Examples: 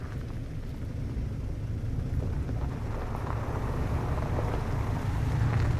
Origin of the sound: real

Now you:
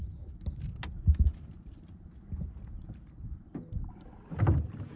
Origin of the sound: real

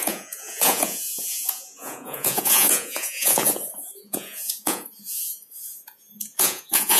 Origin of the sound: fake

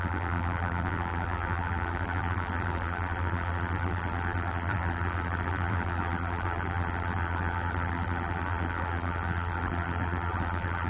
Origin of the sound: fake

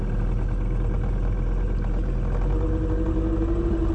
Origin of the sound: real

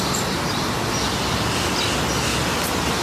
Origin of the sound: real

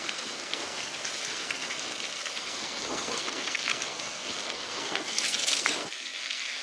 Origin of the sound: fake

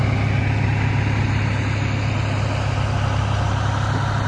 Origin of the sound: real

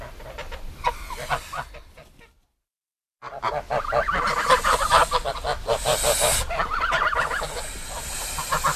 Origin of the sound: real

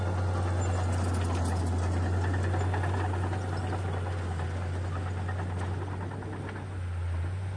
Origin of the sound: real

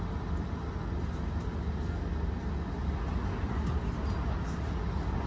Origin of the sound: real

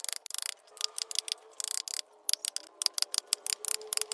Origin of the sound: real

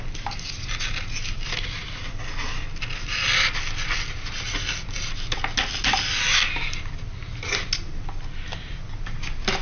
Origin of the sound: real